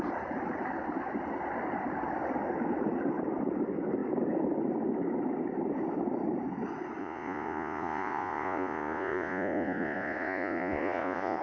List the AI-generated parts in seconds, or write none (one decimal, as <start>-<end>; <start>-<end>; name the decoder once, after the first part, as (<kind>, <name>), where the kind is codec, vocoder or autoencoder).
7.0-11.4 (vocoder, Vocos)

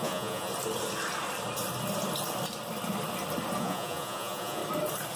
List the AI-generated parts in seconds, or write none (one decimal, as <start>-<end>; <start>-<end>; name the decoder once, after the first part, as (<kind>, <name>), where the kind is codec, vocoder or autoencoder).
0.0-0.5 (vocoder, Vocos); 3.6-4.6

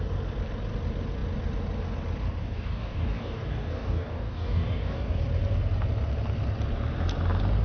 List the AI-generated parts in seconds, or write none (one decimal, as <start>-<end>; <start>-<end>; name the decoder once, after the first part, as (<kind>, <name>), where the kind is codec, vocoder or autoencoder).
2.4-5.2 (codec, DAC)

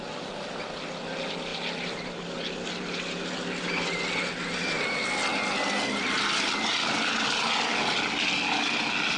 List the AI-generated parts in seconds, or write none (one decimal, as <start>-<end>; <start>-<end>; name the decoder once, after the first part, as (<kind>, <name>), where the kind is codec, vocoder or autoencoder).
none